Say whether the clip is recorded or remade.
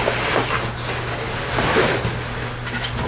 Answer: recorded